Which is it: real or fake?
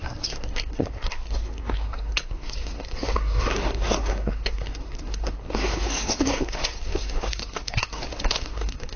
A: fake